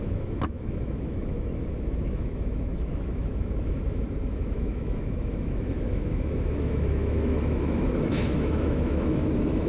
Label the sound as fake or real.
fake